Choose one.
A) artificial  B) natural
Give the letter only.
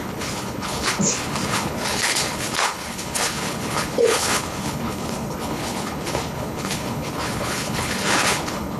A